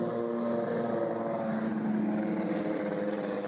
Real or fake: real